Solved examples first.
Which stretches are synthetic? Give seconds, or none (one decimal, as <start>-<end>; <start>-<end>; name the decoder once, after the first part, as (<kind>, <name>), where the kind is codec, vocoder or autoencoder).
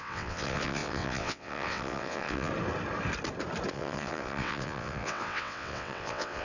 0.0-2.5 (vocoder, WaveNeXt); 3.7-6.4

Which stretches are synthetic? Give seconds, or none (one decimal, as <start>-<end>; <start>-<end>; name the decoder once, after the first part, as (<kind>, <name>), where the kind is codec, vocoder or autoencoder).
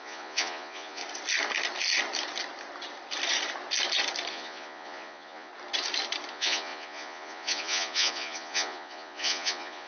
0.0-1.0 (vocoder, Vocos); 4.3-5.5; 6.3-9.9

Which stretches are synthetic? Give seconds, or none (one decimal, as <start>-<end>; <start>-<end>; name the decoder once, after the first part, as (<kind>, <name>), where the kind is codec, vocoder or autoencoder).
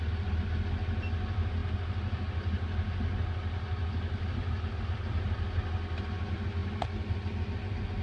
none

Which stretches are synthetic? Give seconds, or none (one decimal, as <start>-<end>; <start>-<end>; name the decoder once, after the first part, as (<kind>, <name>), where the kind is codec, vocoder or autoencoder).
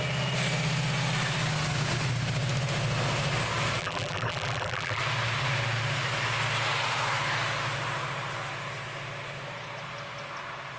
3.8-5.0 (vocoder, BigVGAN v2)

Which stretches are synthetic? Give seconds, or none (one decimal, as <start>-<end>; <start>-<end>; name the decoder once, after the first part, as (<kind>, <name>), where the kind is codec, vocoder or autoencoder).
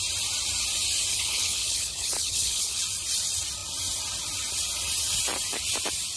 1.1-2.8 (codec, HILCodec)